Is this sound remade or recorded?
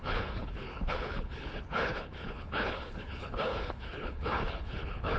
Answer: remade